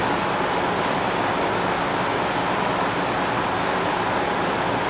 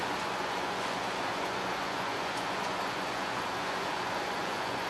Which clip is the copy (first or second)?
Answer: second